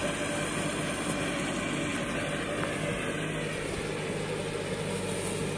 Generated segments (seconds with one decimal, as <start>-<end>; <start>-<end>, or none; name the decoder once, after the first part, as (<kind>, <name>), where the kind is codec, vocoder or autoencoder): none